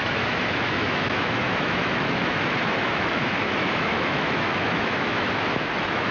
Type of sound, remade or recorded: remade